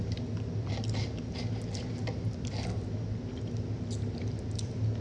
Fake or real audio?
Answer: real